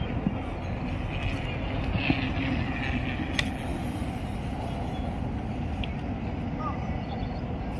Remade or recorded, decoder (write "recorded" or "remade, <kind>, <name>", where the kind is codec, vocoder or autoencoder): recorded